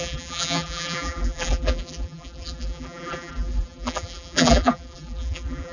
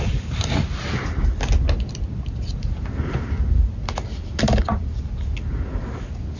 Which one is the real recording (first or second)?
second